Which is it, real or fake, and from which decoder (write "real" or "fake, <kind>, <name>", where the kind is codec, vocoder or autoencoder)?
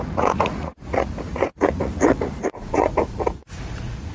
fake, vocoder, Vocos